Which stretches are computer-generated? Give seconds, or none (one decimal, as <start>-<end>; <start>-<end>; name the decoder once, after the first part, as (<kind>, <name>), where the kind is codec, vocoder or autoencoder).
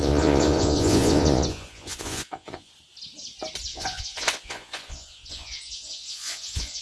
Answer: 0.0-2.7 (vocoder, Vocos); 3.7-6.8